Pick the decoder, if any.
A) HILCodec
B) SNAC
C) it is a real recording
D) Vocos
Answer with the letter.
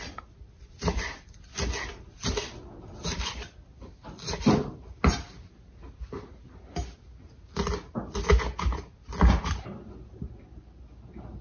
C